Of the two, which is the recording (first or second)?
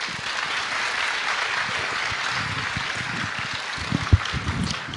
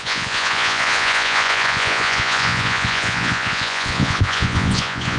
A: first